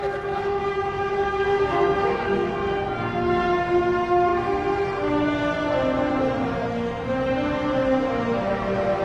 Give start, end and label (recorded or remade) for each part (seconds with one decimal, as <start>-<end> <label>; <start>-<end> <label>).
0.0-2.5 remade; 2.5-9.0 recorded